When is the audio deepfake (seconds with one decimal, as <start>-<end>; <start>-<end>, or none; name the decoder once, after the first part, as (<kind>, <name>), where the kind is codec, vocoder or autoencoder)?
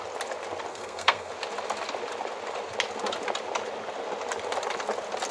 0.7-1.3 (codec, SNAC)